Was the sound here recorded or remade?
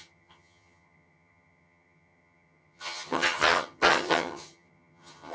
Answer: remade